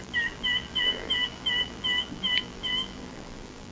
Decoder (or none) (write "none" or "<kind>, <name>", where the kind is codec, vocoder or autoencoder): vocoder, BigVGAN v2